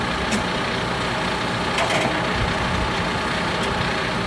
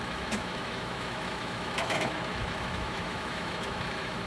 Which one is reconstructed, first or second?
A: second